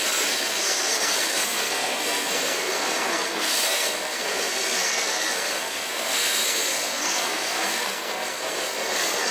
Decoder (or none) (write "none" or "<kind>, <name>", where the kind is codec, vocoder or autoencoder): codec, SNAC